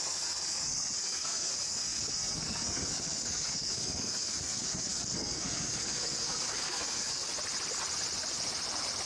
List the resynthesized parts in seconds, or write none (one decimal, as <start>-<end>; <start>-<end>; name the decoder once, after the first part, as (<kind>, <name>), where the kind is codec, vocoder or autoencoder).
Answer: 0.0-7.3 (codec, SNAC)